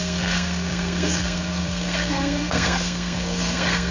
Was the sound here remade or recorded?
remade